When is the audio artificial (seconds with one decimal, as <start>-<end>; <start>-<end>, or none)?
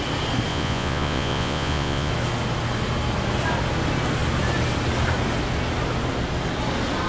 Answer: 0.5-2.1